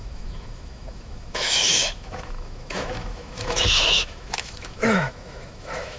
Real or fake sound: fake